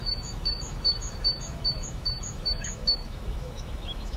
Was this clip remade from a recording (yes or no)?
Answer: yes